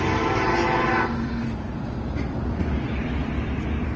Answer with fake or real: real